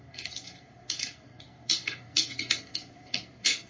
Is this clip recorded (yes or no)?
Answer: no